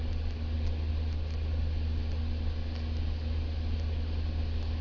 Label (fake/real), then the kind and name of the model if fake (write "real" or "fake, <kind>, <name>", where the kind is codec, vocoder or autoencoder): real